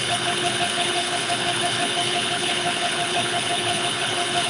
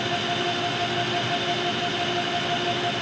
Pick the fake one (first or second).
first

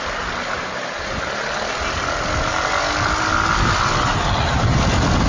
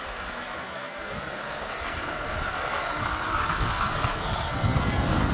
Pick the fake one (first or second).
second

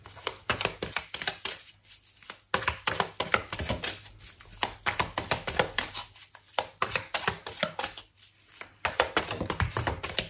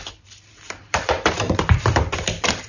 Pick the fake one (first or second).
second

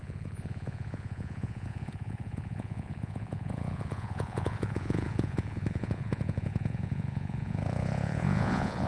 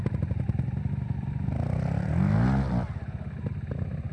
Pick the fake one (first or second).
first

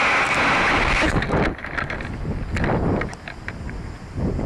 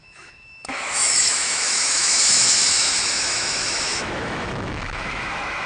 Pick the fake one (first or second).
second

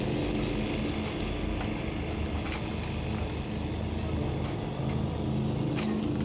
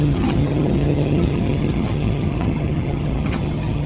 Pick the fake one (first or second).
second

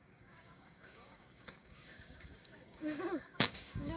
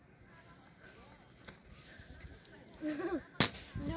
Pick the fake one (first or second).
first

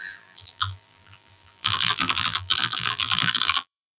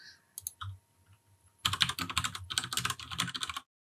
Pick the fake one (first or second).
first